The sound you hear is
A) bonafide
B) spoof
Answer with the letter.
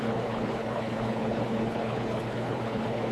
B